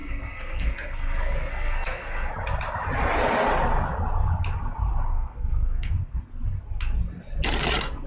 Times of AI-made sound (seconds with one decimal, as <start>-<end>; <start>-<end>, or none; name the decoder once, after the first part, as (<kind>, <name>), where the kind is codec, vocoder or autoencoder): 0.0-2.3 (codec, SNAC); 5.1-6.2

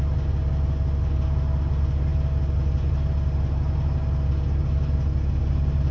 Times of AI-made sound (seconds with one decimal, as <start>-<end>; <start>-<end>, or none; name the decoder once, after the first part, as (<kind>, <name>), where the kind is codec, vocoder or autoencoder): none

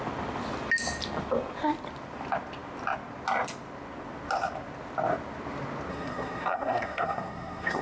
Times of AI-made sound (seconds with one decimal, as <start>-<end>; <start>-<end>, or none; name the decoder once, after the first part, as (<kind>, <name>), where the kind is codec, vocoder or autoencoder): 5.9-7.8 (codec, SNAC)

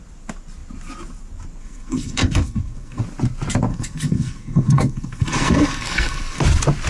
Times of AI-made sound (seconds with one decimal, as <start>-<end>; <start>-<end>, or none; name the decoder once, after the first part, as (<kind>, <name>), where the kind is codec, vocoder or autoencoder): 1.6-3.0 (codec, SNAC); 3.7-6.4